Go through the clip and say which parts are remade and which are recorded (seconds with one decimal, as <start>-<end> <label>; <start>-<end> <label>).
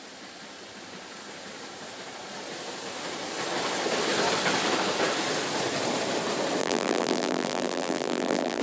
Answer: 0.0-6.6 recorded; 6.6-8.6 remade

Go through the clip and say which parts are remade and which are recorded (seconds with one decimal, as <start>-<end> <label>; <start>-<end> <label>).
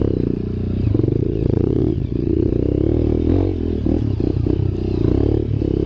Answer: 0.0-1.2 recorded; 1.2-2.5 remade; 2.5-5.9 recorded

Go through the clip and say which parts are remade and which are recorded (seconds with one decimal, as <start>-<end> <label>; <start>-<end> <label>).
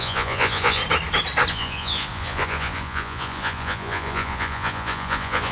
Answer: 0.0-0.8 remade; 0.8-1.5 recorded; 1.5-5.5 remade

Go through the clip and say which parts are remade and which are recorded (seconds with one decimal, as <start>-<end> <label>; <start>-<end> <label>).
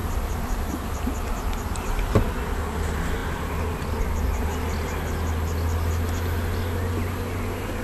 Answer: 0.0-2.3 remade; 2.3-7.8 recorded